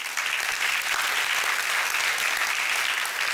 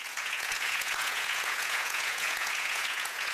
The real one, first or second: first